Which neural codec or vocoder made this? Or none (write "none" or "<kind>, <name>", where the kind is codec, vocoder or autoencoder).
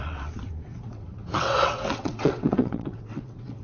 vocoder, WaveNeXt